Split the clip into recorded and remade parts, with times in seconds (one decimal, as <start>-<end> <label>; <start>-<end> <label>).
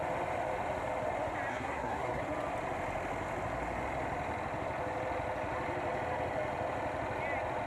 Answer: 0.0-1.5 recorded; 1.5-2.2 remade; 2.2-7.7 recorded